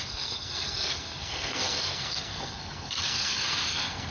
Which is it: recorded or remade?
remade